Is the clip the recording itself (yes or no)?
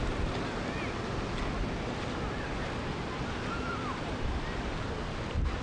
yes